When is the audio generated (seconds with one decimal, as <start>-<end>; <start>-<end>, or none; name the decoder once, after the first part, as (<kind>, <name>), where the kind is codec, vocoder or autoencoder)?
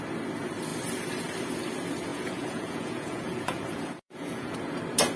2.1-4.8 (vocoder, Vocos)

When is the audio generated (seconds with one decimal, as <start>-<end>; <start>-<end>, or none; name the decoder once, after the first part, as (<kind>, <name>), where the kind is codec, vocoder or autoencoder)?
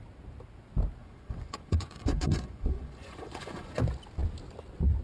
1.0-3.8 (vocoder, Vocos)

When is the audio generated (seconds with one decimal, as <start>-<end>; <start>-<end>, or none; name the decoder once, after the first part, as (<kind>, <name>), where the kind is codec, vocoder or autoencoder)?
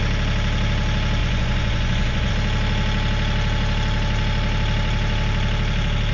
1.2-2.3 (vocoder, Vocos)